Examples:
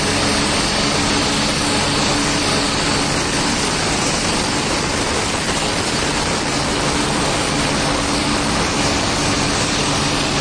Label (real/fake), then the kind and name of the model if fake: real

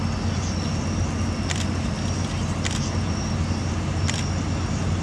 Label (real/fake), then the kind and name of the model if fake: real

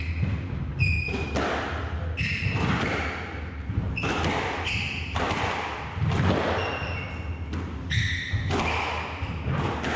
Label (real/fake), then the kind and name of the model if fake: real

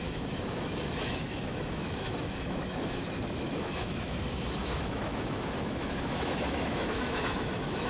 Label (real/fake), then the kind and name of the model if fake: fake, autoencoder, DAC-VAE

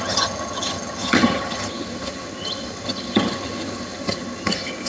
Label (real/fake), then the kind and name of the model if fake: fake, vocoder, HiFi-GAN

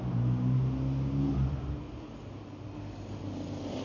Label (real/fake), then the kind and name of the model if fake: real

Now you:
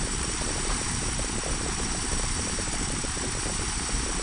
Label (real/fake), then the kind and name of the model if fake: fake, vocoder, BigVGAN v2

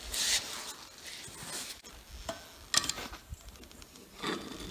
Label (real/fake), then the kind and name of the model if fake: real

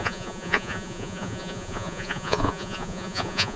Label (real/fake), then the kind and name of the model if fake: fake, vocoder, Vocos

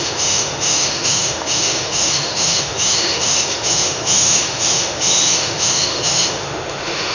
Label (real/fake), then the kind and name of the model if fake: fake, autoencoder, DAC-VAE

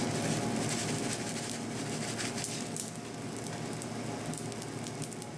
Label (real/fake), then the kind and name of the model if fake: real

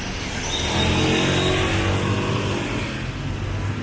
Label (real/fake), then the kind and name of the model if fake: real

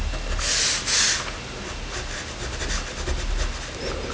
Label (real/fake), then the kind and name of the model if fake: real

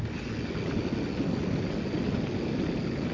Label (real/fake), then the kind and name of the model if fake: real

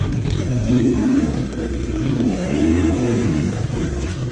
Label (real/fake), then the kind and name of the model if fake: fake, codec, SNAC